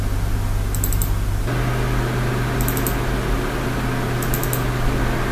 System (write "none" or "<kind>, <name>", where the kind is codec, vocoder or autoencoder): none